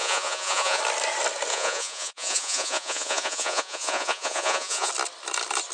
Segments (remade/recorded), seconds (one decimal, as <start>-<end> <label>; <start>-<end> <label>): 0.0-0.8 remade; 0.8-1.5 recorded; 1.5-4.9 remade; 4.9-5.7 recorded